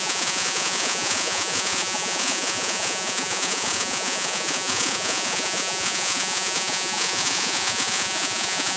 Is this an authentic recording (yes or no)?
no